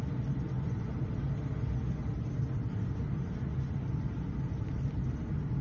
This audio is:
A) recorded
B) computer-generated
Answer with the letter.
A